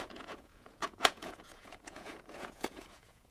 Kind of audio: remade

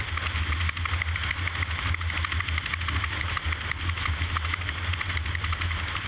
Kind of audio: recorded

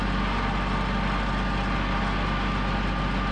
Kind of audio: recorded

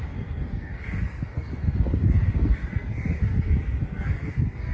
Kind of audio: remade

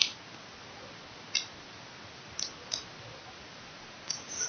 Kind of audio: recorded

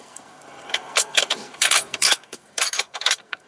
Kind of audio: remade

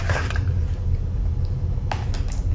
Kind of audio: recorded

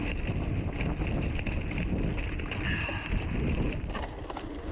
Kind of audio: recorded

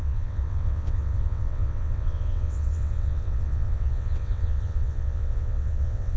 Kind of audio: remade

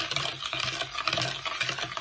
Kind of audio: remade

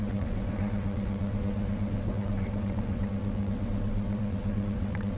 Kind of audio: remade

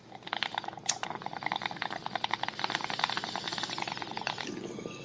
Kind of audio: recorded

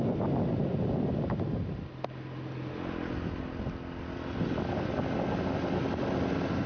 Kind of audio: recorded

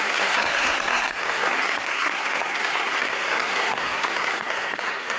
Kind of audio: remade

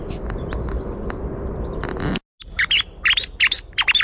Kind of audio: recorded